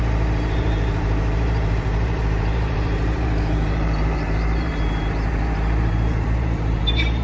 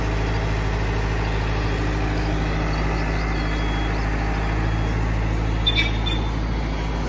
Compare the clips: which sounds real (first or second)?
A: second